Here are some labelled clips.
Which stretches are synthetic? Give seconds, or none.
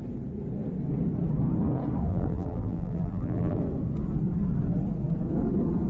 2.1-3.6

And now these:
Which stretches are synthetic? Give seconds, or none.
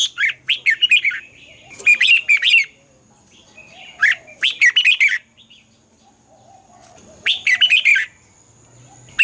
1.0-4.0; 6.7-7.9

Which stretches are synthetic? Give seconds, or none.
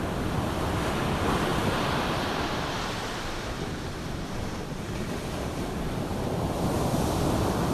none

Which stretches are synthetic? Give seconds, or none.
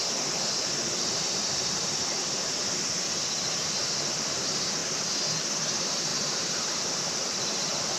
0.0-4.8; 5.4-8.0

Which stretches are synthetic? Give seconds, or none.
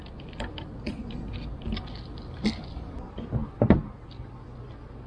none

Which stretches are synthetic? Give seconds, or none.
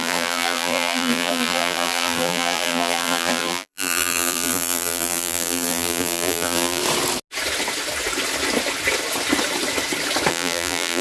0.0-6.8; 10.3-11.0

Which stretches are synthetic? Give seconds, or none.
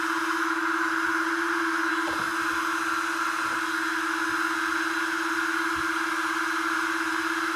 0.0-1.9; 4.9-7.6